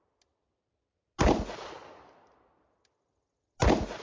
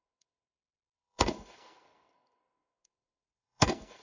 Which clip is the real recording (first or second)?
first